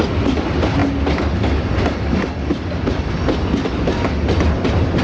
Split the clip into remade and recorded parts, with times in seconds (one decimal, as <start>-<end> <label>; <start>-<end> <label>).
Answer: 0.0-5.0 recorded